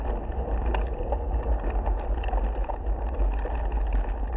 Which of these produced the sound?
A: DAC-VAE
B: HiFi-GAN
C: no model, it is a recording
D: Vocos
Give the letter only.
C